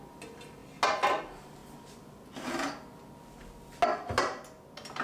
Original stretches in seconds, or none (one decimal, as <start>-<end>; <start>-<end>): 0.0-5.0